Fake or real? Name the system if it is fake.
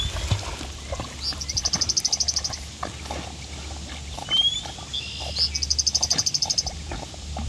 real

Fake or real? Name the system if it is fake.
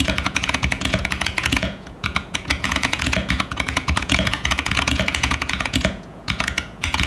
fake, vocoder, Vocos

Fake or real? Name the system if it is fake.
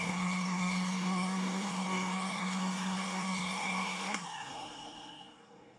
fake, codec, SNAC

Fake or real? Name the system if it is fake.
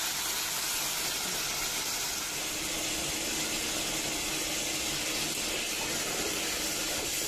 real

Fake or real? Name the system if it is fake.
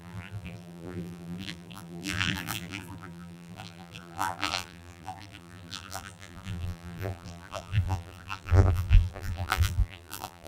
fake, vocoder, BigVGAN v2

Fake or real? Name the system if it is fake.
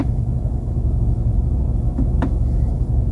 fake, autoencoder, DAC-VAE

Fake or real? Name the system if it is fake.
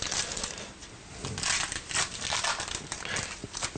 real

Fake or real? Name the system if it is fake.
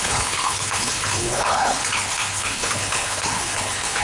fake, codec, HILCodec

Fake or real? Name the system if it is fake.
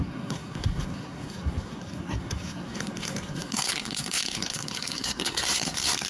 fake, codec, SNAC